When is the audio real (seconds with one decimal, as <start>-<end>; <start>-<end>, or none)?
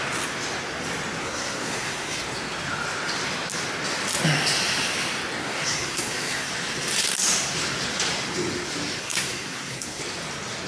0.0-1.2; 2.1-5.4; 6.5-9.0; 10.0-10.7